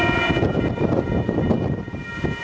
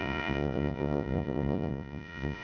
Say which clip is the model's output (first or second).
second